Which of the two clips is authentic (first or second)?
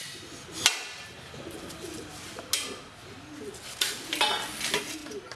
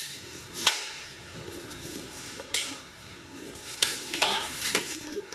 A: first